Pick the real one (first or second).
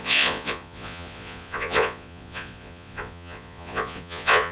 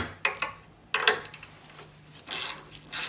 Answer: second